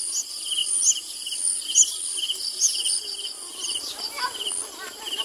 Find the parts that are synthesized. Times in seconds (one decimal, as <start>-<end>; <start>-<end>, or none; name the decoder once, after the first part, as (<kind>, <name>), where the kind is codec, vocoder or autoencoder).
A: none